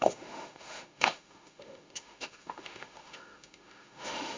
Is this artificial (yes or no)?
yes